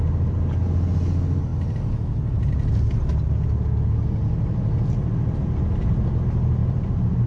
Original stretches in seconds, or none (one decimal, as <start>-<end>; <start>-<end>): 0.0-6.6